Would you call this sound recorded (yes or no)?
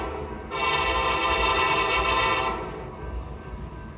yes